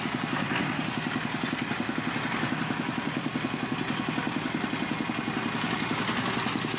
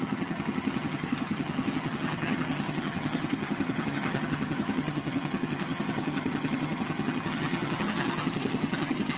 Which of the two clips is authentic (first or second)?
first